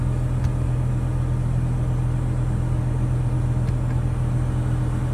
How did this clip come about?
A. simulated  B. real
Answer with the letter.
B